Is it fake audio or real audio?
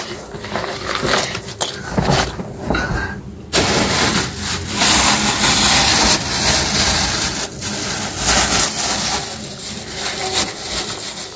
real